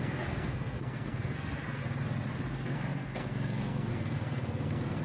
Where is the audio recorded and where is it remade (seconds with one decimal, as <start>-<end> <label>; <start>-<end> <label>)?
0.0-1.8 remade; 1.8-2.5 recorded; 2.5-5.0 remade